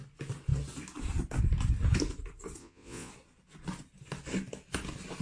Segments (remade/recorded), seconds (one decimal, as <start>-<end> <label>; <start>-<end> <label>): 0.0-2.6 recorded; 2.6-3.1 remade; 3.1-5.2 recorded